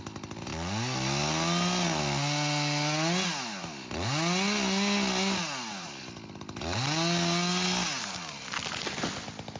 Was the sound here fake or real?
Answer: real